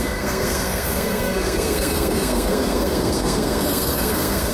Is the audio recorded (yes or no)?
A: no